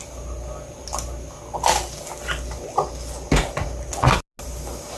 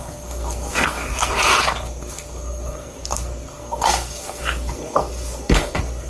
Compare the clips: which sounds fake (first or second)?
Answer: second